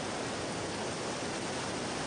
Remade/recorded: recorded